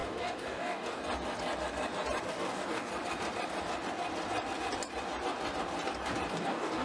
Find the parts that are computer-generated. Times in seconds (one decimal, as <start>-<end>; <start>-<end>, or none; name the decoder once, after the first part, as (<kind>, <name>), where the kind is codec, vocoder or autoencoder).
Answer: 0.0-1.0 (codec, DAC); 2.3-2.9; 6.3-6.8

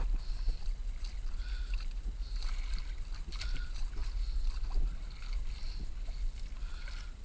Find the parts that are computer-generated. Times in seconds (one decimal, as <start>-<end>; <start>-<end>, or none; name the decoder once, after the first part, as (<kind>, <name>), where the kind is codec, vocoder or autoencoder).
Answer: none

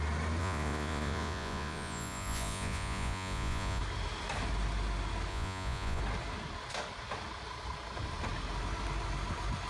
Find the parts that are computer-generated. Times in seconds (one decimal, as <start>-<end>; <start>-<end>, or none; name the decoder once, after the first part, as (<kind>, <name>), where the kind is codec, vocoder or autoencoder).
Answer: 0.4-3.8 (vocoder, Vocos); 5.3-6.0

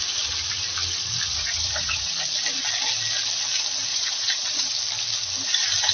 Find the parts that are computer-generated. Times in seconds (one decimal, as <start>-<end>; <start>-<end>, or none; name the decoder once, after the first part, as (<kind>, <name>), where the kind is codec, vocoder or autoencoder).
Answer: 1.3-2.1 (vocoder, Vocos); 3.9-4.7

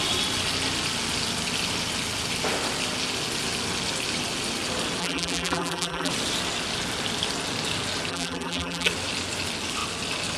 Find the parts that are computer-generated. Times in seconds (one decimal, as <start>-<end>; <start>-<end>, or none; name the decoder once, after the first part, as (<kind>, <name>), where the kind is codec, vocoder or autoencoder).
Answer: 5.0-6.1 (vocoder, BigVGAN v2); 8.1-8.9

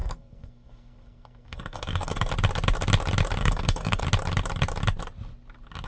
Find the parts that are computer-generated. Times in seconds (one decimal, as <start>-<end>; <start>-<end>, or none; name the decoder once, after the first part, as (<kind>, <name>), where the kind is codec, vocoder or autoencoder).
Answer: 0.0-2.3 (codec, SNAC); 3.4-4.0